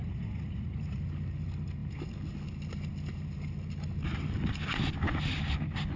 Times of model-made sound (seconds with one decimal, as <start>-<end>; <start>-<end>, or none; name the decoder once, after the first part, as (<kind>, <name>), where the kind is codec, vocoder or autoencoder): 0.0-1.0 (vocoder, Vocos)